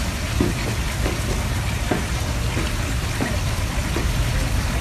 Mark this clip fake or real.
real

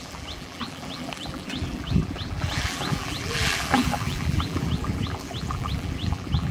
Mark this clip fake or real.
fake